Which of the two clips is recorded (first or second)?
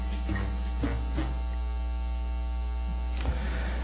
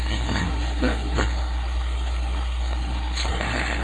first